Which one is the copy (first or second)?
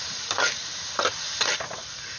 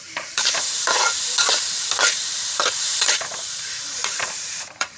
second